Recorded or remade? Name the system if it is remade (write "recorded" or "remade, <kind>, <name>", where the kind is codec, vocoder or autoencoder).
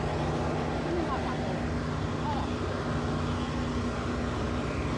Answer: recorded